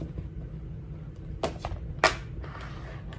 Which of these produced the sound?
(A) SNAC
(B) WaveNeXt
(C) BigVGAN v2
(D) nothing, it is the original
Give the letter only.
D